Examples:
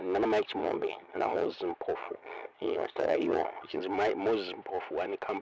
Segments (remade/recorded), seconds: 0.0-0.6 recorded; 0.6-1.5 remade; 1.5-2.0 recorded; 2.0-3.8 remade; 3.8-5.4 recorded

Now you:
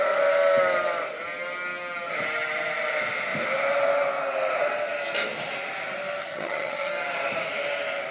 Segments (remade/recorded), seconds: 0.0-6.2 recorded; 6.2-6.9 remade; 6.9-8.1 recorded

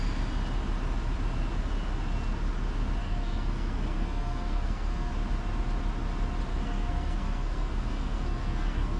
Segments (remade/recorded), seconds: 0.0-3.0 recorded; 3.0-5.1 remade; 5.1-6.5 recorded; 6.5-9.0 remade

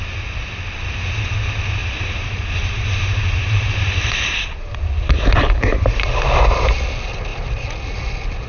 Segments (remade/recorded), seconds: 0.0-1.8 recorded; 1.8-6.0 remade; 6.0-8.5 recorded

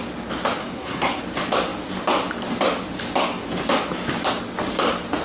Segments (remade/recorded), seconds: 0.0-0.6 recorded; 0.6-1.2 remade; 1.2-5.2 recorded

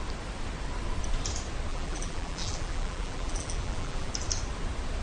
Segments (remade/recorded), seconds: 0.0-1.7 recorded; 1.7-4.1 remade; 4.1-5.0 recorded

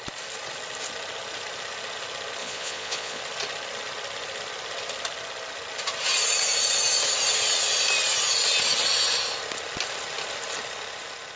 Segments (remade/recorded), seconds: 0.0-2.4 recorded; 2.4-3.2 remade; 3.2-11.4 recorded